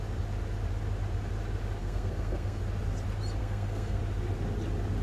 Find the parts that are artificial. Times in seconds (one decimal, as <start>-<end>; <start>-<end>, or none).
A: 1.8-2.6; 3.4-4.0